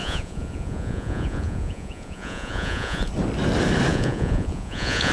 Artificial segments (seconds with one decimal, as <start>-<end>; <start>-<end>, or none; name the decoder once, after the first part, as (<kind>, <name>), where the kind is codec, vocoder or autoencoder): 0.0-3.1 (vocoder, Vocos); 3.9-5.1